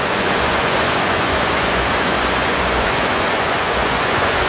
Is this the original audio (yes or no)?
no